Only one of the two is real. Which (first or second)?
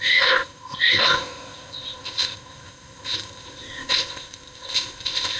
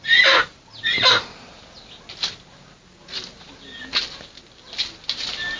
second